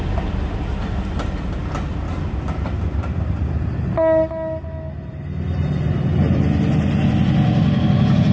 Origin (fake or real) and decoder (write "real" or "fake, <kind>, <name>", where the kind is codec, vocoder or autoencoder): real